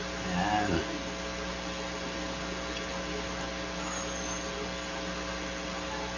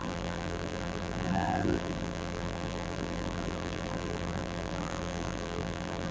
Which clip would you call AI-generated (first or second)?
second